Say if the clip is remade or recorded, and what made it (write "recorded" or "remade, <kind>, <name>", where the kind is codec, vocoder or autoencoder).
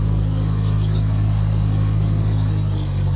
remade, codec, SNAC